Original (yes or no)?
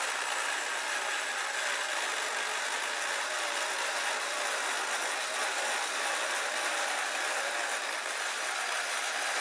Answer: yes